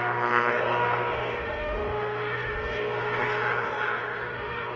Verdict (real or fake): fake